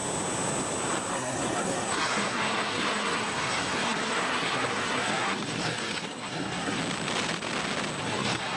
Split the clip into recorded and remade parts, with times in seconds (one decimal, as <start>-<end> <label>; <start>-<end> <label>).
0.0-1.1 recorded; 1.1-6.8 remade; 6.8-8.0 recorded; 8.0-8.6 remade

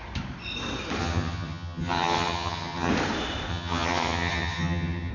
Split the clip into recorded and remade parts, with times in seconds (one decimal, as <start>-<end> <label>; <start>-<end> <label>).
0.0-1.0 recorded; 1.0-2.9 remade; 2.9-3.5 recorded; 3.5-5.1 remade